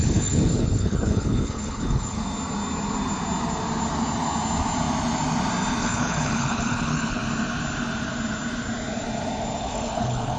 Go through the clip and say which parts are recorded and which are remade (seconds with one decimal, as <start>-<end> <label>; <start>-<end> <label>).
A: 0.0-2.2 remade; 2.2-5.8 recorded; 5.8-7.2 remade; 7.2-9.6 recorded; 9.6-10.4 remade